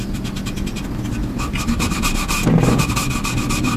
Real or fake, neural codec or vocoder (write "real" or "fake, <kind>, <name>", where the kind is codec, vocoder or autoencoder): real